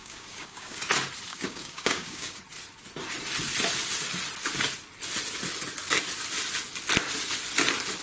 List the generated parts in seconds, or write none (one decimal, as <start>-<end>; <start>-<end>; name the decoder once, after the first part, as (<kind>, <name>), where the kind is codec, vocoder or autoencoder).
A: 0.0-0.8 (codec, DAC); 1.3-2.4